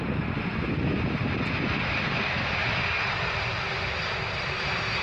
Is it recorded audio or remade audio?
recorded